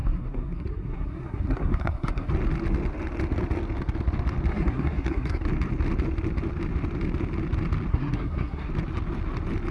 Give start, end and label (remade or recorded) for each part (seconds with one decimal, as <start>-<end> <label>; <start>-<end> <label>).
0.0-2.3 remade; 2.3-4.5 recorded; 4.5-5.4 remade; 5.4-7.9 recorded; 7.9-8.7 remade; 8.7-9.7 recorded